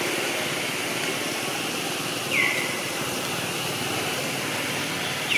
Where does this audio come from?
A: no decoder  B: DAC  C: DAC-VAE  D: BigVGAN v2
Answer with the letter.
A